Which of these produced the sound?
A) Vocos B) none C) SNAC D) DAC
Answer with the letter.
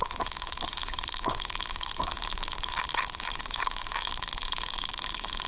D